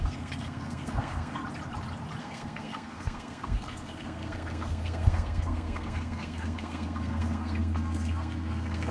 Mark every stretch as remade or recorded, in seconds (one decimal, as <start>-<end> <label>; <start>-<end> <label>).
0.0-1.4 remade; 1.4-2.2 recorded; 2.2-8.9 remade